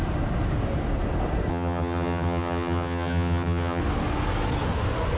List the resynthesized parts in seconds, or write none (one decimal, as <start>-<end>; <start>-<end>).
1.5-3.8